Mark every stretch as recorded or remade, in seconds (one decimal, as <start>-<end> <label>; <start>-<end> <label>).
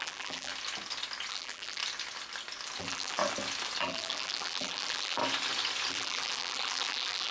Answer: 0.0-0.5 remade; 0.5-1.3 recorded; 1.3-1.8 remade; 1.8-2.8 recorded; 2.8-3.2 remade; 3.2-3.8 recorded; 3.8-5.2 remade; 5.2-5.9 recorded; 5.9-7.3 remade